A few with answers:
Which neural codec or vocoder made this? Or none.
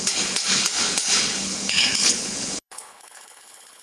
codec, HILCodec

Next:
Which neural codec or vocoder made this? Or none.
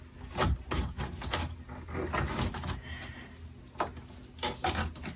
none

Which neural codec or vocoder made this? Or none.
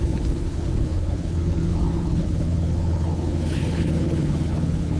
codec, HILCodec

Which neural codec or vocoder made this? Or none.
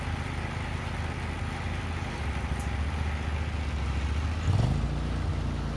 none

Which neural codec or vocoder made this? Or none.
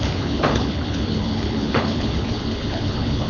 codec, HILCodec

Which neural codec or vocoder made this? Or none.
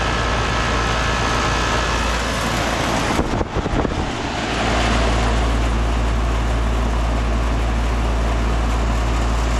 none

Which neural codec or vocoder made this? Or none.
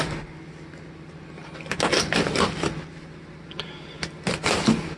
none